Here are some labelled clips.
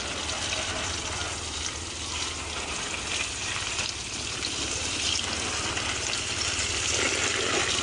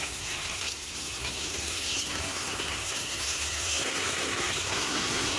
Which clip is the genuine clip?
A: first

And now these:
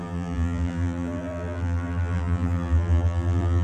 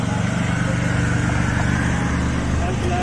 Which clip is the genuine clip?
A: second